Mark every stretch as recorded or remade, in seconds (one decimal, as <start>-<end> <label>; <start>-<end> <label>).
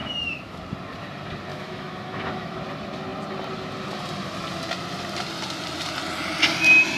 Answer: 0.0-0.6 remade; 0.6-1.5 recorded; 1.5-2.6 remade; 2.6-7.0 recorded